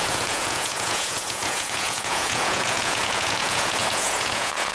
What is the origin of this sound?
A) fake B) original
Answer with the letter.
A